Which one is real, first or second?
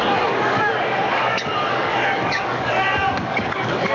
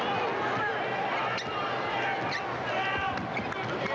second